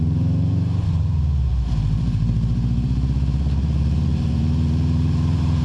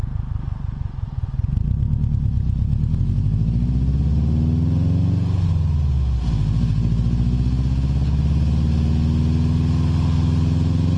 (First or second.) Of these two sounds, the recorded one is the second